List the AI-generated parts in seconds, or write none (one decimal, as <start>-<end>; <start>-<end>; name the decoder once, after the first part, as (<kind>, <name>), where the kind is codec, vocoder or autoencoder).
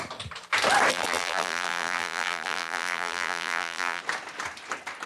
0.9-4.0 (vocoder, BigVGAN v2)